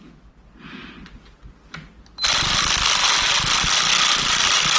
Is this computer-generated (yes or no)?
no